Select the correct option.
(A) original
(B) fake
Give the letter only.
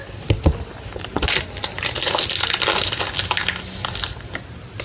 A